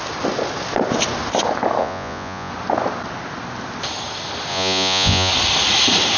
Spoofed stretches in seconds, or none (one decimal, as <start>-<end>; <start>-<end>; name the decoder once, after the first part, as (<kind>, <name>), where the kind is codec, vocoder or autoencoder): 1.8-2.5 (vocoder, Vocos); 4.5-5.3